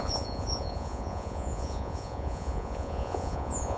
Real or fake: fake